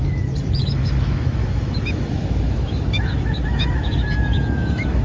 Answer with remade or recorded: remade